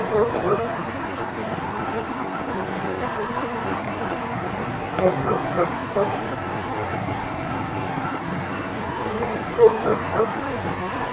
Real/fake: fake